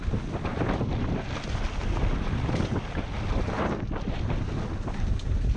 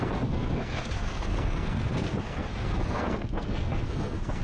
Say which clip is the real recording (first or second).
first